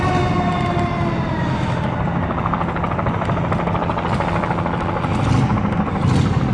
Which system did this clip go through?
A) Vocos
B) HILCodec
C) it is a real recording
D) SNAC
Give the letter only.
C